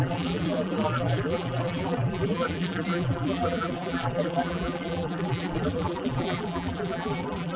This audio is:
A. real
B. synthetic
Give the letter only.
B